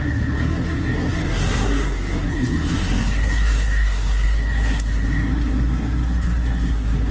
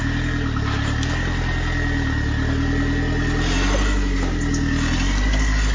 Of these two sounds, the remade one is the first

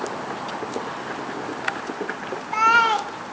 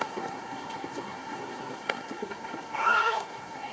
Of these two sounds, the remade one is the second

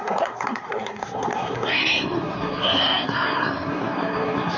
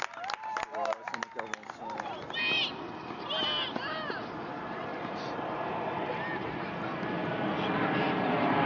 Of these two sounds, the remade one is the first